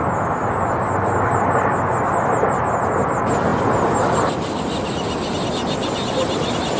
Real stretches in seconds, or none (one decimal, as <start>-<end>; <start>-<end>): 0.0-6.8